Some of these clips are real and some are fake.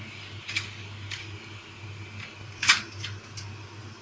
fake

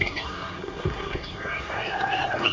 fake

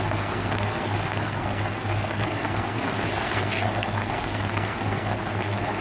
fake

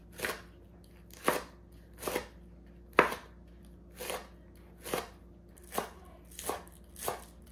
real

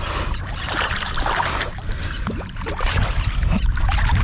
fake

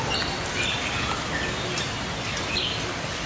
real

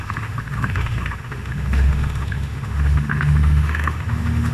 fake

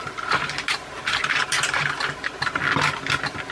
real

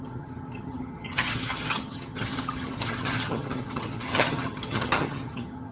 fake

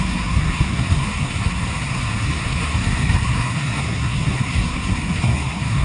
fake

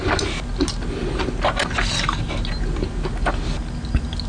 real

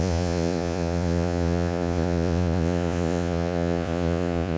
fake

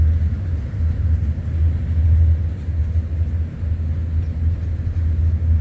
real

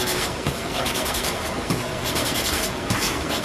fake